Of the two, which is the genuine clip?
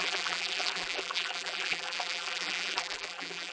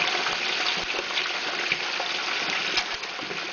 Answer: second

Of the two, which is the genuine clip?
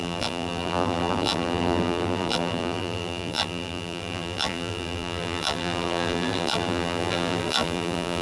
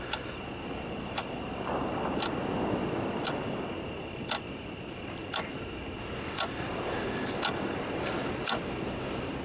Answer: second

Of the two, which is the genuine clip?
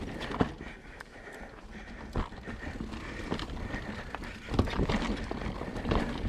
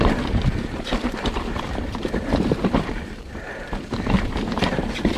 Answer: first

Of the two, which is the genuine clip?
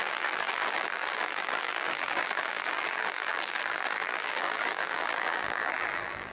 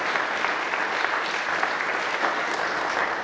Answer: second